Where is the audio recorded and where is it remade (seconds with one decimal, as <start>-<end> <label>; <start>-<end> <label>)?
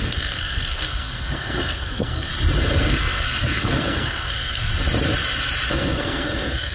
0.0-2.3 remade; 2.3-2.8 recorded; 2.8-4.7 remade; 4.7-5.7 recorded; 5.7-6.7 remade